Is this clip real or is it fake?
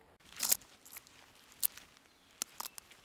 real